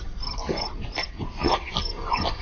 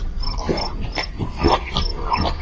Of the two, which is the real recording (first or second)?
second